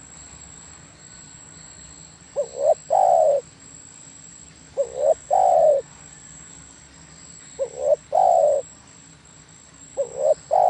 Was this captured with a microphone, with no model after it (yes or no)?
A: no